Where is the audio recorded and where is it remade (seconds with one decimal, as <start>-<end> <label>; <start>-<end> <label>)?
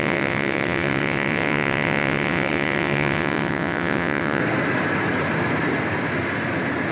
0.0-4.4 remade; 4.4-6.9 recorded